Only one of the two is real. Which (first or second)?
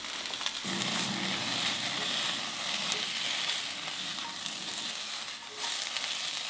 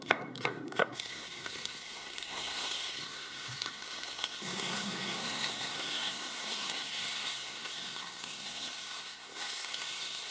first